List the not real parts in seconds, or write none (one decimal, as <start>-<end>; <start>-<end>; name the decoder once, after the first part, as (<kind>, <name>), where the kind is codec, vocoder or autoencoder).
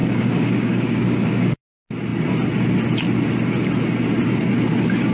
0.0-1.6 (codec, DAC)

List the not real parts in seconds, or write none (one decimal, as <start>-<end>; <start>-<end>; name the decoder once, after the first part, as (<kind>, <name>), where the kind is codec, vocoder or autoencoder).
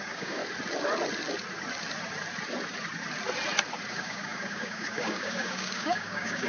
0.0-0.4 (codec, DAC); 3.9-6.5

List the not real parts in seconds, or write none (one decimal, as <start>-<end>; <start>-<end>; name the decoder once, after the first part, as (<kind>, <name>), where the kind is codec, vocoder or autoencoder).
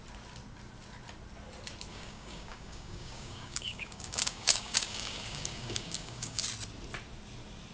1.9-6.4 (codec, DAC)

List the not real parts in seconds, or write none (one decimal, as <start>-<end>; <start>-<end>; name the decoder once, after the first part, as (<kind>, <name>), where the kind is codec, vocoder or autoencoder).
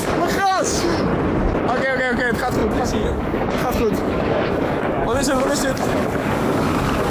0.0-1.1 (codec, DAC); 2.0-7.1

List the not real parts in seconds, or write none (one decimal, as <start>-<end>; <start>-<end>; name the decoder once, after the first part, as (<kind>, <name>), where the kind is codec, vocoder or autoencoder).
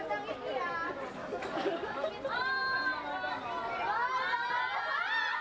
1.2-2.1 (codec, DAC)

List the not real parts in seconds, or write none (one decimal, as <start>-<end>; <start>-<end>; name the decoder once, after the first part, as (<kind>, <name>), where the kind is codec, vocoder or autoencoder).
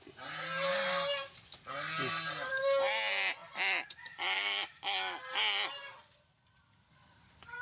none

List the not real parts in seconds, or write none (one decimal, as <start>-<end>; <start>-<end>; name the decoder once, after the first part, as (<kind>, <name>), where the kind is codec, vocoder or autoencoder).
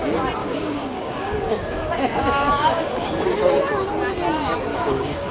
0.4-3.6 (codec, DAC); 4.7-5.3